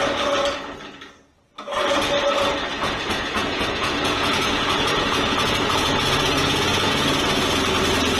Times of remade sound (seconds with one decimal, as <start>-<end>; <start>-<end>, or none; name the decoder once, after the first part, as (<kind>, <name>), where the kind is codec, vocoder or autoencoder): 2.7-7.6 (vocoder, Vocos)